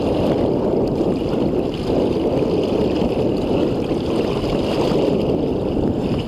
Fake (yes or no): no